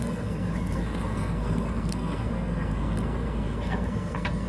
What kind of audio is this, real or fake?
fake